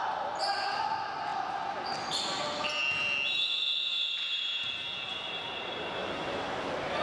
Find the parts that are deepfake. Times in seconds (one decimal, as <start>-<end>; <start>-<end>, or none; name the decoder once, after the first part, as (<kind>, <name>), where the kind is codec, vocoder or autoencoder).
3.9-4.7 (vocoder, BigVGAN v2)

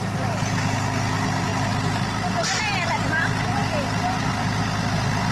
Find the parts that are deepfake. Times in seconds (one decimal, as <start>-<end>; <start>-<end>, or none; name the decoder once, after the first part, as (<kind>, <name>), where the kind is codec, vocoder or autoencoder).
none

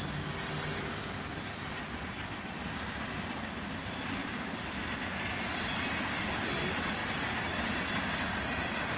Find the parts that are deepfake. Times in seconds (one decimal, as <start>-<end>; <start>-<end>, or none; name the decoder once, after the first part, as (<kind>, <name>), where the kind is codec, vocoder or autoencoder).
1.3-2.0 (vocoder, BigVGAN v2); 4.2-4.8

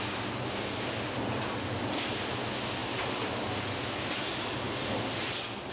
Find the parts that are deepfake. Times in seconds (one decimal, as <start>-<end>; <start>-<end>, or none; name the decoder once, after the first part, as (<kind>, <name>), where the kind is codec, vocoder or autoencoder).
2.8-4.5 (vocoder, BigVGAN v2)

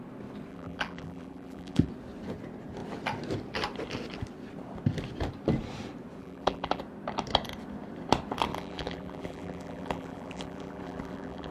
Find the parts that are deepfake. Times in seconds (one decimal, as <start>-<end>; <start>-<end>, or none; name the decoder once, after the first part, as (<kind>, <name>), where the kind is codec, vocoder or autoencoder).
0.5-1.9 (vocoder, BigVGAN v2); 6.2-6.8; 8.5-11.5

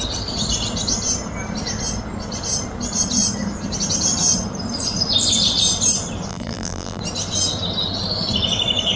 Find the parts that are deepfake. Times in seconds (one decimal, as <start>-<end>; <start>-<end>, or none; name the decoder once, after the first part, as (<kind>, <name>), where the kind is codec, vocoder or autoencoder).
6.3-7.0 (vocoder, BigVGAN v2)